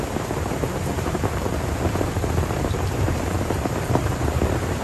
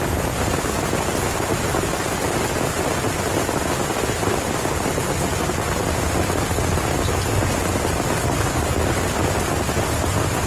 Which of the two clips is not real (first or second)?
first